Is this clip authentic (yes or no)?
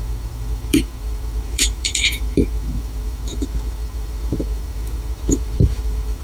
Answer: no